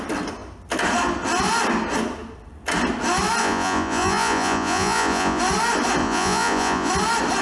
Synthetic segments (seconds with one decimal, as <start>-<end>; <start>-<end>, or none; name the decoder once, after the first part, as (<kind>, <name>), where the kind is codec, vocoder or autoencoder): 3.4-5.4 (vocoder, Vocos); 6.0-6.9